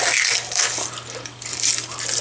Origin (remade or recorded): recorded